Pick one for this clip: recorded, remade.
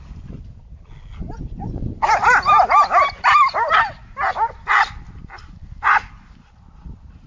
recorded